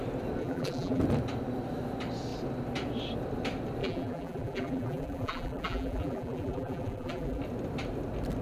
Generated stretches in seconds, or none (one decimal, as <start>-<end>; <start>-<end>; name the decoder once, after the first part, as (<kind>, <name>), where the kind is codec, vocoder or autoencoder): 0.4-1.0 (vocoder, BigVGAN v2); 3.8-7.4